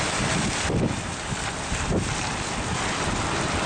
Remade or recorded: remade